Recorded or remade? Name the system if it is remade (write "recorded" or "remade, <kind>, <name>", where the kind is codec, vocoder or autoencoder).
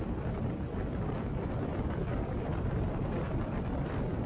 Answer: remade, vocoder, BigVGAN v2